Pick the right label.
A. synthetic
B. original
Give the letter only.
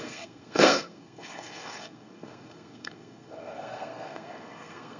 A